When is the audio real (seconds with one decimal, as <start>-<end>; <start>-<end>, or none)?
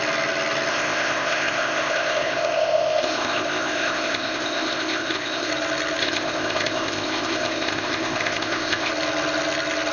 0.0-0.7; 5.5-6.0; 8.9-9.9